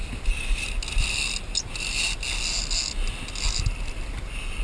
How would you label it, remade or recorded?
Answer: recorded